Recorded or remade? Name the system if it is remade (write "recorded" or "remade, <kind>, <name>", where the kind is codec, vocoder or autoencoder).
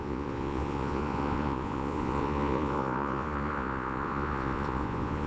remade, vocoder, Vocos